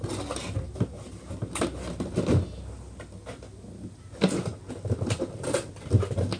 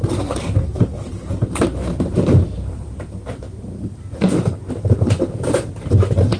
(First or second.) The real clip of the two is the first